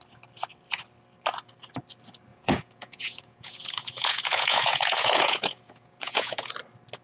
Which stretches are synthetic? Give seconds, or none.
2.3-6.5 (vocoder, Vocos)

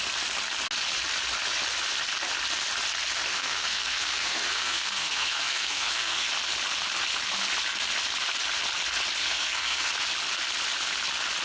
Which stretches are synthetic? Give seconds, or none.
3.3-6.3 (codec, SNAC); 9.2-9.9

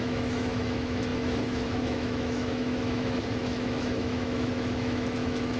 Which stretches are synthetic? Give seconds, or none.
0.0-5.6 (autoencoder, DAC-VAE)